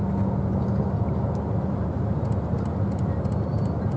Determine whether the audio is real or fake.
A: real